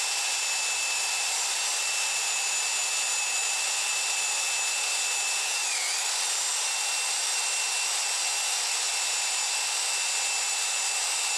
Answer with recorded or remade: recorded